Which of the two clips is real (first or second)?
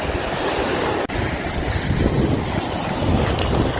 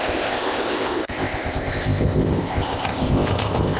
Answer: first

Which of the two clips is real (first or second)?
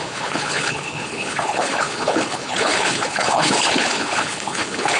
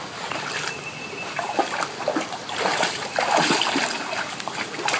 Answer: second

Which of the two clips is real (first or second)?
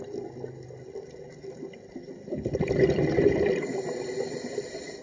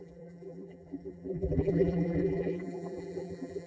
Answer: first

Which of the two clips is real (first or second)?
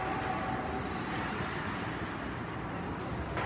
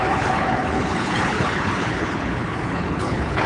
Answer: first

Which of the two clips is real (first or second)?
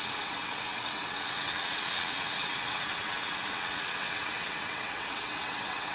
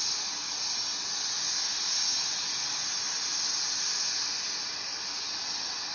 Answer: second